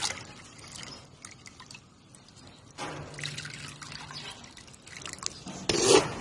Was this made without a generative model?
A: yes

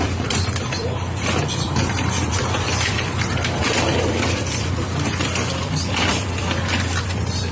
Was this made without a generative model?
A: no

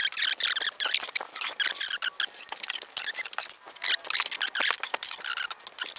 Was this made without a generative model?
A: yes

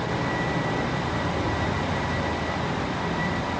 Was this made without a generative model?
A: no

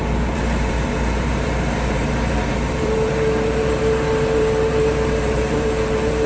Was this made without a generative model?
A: no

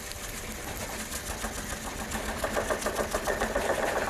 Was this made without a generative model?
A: yes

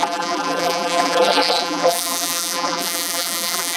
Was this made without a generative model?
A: no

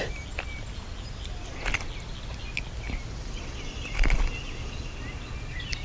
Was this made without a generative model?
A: yes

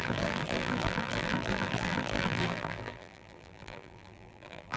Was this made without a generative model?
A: no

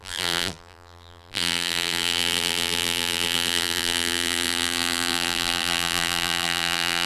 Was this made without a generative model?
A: no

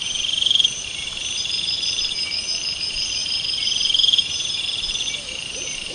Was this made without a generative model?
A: no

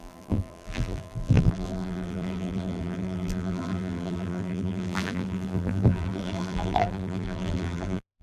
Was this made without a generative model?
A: no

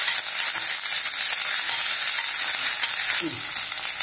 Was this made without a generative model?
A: yes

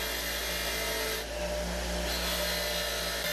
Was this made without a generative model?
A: yes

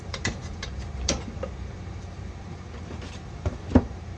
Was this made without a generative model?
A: no